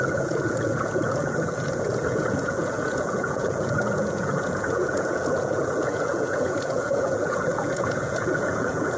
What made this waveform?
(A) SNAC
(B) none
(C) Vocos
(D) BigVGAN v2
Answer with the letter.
C